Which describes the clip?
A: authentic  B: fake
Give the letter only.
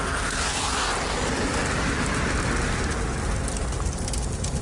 A